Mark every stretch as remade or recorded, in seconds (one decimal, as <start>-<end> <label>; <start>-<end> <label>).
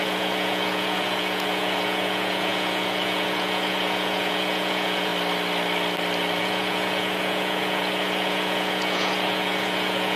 0.0-5.1 remade; 5.1-6.4 recorded; 6.4-10.2 remade